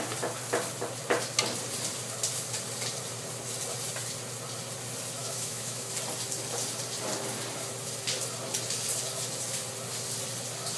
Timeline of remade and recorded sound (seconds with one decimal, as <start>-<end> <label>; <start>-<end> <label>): 0.0-5.2 recorded; 5.2-5.9 remade; 5.9-10.8 recorded